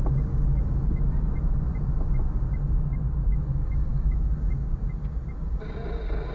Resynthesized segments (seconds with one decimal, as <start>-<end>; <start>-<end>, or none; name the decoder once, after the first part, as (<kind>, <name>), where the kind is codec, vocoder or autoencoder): 3.9-4.8 (codec, DAC)